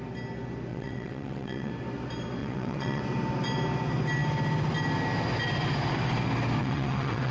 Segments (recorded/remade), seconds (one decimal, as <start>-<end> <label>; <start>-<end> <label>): 0.0-0.7 recorded; 0.7-1.7 remade; 1.7-2.4 recorded; 2.4-3.0 remade; 3.0-6.6 recorded; 6.6-7.3 remade

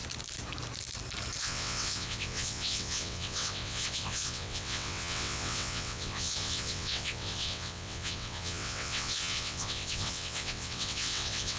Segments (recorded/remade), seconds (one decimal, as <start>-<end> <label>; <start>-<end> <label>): 0.0-1.4 recorded; 1.4-11.6 remade

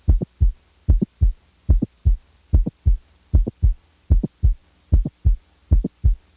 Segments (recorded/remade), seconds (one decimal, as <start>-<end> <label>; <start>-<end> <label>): 0.0-6.4 recorded

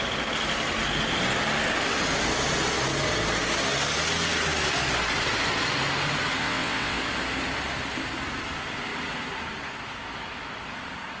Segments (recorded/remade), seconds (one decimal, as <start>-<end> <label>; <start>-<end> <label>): 0.0-6.4 recorded; 6.4-7.0 remade; 7.0-11.2 recorded